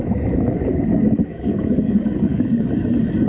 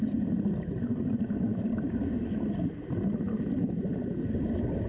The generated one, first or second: first